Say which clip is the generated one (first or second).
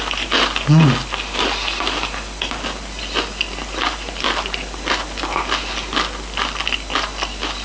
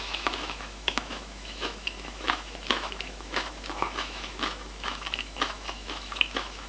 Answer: second